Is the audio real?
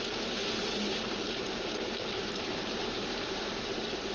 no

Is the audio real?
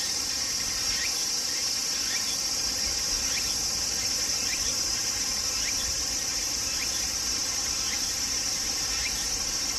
no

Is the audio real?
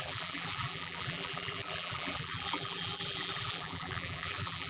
no